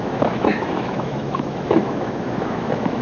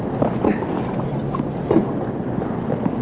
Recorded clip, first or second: second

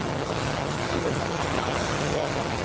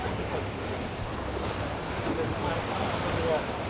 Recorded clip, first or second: second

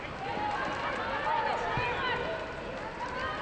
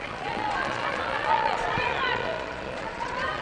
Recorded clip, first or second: first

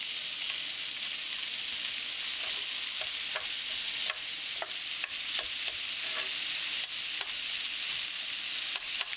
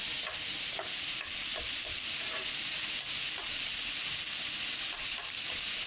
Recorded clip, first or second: first